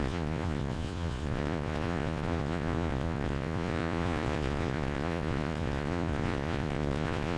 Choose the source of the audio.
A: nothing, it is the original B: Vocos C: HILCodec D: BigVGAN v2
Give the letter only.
B